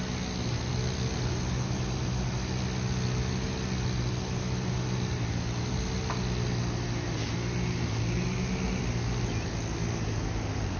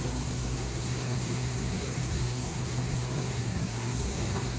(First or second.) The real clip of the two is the first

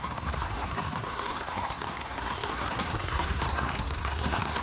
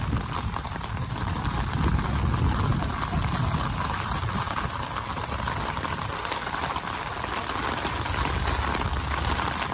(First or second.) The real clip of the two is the second